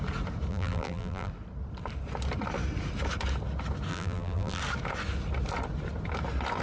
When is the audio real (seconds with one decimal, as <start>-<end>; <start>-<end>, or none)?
0.0-0.5; 1.3-3.9; 4.6-6.6